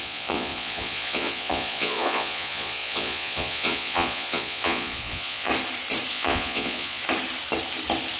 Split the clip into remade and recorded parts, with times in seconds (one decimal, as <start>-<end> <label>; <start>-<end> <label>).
0.0-5.5 remade; 5.5-6.1 recorded; 6.1-7.0 remade; 7.0-8.2 recorded